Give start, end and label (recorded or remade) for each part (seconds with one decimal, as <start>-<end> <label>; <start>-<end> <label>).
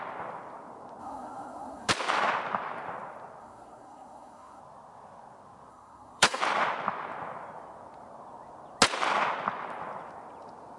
0.0-1.0 recorded; 1.0-1.9 remade; 1.9-3.4 recorded; 3.4-4.6 remade; 4.6-5.7 recorded; 5.7-6.4 remade; 6.4-10.8 recorded